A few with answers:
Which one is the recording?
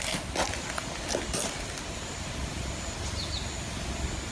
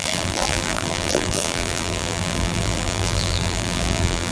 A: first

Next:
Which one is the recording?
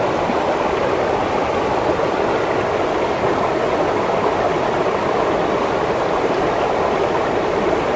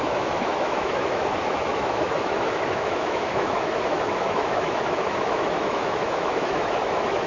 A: first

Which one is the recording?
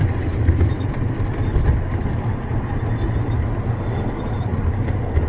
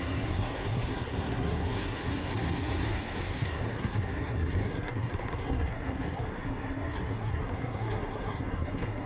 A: first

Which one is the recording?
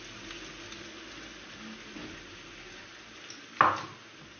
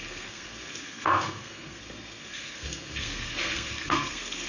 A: first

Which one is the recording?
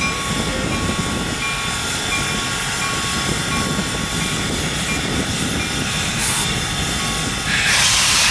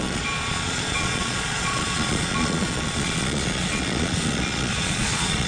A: first